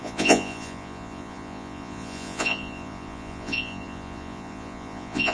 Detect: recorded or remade remade